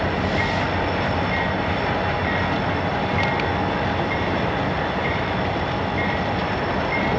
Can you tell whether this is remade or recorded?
recorded